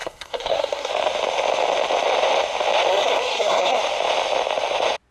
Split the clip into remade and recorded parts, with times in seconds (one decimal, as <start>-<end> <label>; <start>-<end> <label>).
0.0-0.9 remade; 0.9-2.9 recorded; 2.9-3.8 remade; 3.8-5.1 recorded